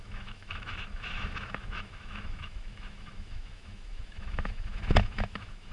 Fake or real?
fake